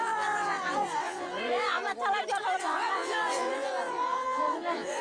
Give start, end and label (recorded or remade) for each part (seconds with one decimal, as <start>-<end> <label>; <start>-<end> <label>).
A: 0.0-1.8 remade; 1.8-2.6 recorded; 2.6-5.0 remade